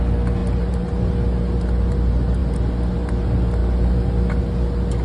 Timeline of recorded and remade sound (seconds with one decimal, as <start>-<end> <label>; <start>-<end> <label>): 0.0-0.4 recorded; 0.4-1.1 remade; 1.1-5.0 recorded